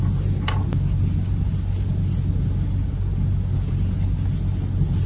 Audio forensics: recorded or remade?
recorded